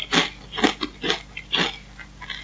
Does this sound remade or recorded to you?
recorded